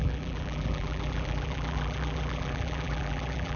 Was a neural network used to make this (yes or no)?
yes